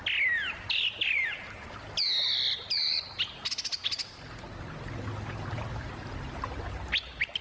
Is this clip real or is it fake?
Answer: real